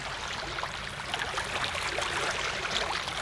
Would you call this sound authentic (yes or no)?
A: yes